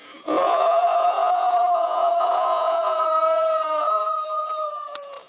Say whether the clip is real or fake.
fake